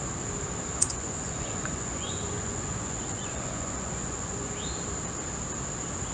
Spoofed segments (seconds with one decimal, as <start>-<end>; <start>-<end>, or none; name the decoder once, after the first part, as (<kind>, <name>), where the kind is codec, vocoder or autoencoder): 0.8-4.5 (vocoder, Vocos)